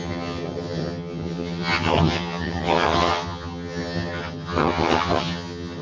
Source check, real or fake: fake